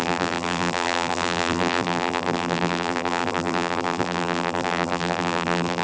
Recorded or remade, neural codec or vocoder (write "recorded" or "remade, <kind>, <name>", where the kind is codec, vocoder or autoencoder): remade, vocoder, BigVGAN v2